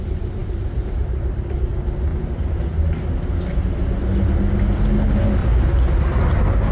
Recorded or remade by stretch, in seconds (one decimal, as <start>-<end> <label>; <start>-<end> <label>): 0.0-0.4 recorded; 0.4-1.7 remade; 1.7-2.1 recorded; 2.1-2.6 remade; 2.6-5.4 recorded; 5.4-6.7 remade

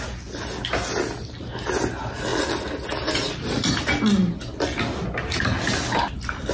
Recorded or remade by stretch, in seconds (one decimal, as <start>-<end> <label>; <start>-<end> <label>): 0.0-6.5 recorded